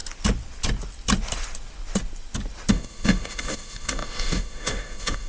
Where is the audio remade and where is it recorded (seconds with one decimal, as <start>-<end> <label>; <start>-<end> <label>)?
0.0-2.7 recorded; 2.7-5.3 remade